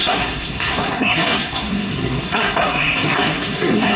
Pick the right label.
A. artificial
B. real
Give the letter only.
A